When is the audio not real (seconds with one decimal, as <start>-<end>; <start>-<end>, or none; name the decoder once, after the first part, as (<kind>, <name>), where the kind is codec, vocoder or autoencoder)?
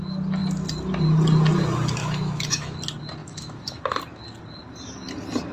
2.0-2.8 (autoencoder, DAC-VAE); 3.2-3.8